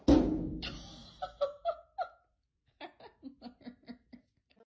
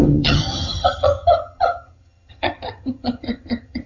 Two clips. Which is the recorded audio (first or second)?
first